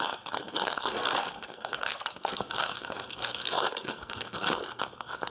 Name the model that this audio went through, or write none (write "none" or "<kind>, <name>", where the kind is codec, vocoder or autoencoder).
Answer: codec, SNAC